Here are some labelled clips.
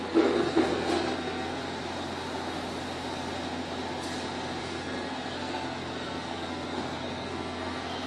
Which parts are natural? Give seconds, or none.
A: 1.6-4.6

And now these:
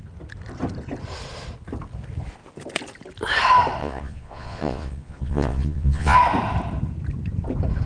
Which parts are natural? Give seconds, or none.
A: 0.0-3.8; 6.2-7.9